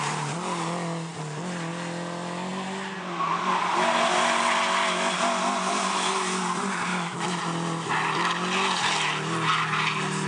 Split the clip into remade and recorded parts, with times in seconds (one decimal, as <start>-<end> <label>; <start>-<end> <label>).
0.0-6.9 recorded; 6.9-7.4 remade; 7.4-10.3 recorded